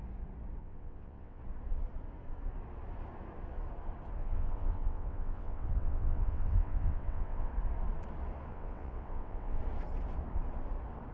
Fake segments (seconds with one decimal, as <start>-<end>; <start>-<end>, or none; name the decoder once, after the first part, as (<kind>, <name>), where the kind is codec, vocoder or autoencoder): 0.6-1.4 (vocoder, WaveNeXt); 4.2-7.5; 8.5-9.6